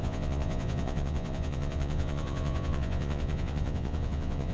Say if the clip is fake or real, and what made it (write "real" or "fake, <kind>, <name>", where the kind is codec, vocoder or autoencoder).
fake, vocoder, Vocos